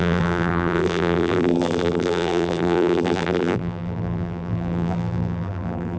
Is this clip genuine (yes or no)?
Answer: no